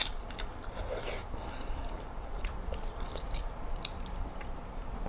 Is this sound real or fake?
real